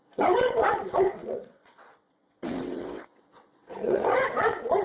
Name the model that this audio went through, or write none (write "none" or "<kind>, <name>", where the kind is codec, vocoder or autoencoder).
vocoder, WaveNeXt